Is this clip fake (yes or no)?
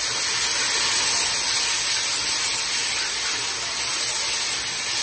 no